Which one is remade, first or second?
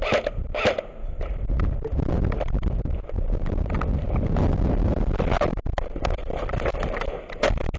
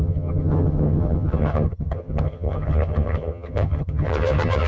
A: second